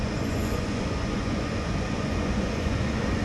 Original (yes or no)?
no